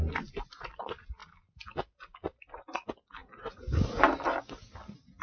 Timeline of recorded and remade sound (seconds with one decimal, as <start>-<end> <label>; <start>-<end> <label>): 0.0-5.2 recorded